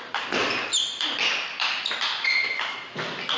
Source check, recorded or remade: recorded